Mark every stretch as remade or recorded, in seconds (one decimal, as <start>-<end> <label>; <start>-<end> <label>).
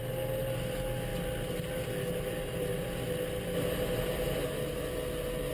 0.0-5.5 recorded